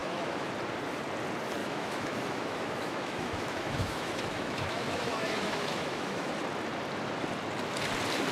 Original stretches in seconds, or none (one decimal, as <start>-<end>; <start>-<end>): 0.5-1.6; 6.3-8.3